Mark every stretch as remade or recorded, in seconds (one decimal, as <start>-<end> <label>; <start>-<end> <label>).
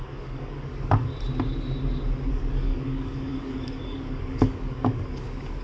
0.0-1.1 remade; 1.1-2.3 recorded; 2.3-5.6 remade